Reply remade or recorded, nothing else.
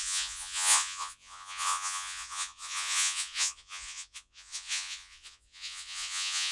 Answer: remade